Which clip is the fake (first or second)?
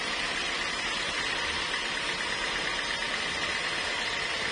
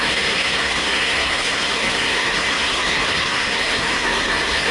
second